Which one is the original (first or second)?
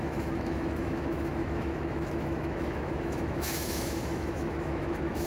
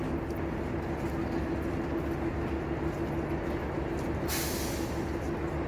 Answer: second